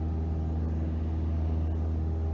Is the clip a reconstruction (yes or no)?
no